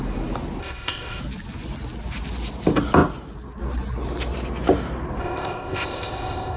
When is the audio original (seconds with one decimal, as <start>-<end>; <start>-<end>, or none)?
0.0-0.6; 1.2-5.2